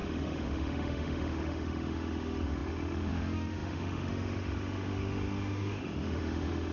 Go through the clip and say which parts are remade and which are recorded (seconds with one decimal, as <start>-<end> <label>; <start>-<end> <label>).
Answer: 0.0-6.7 remade